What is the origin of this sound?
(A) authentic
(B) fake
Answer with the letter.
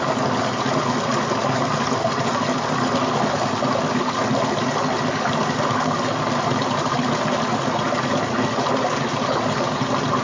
A